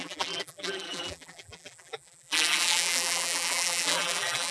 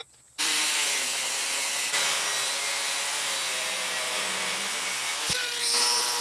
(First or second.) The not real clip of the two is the first